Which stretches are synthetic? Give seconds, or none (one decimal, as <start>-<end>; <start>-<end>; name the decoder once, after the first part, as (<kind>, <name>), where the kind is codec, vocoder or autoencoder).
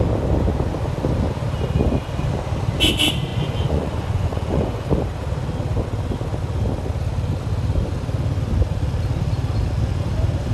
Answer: 3.3-4.9 (vocoder, Vocos)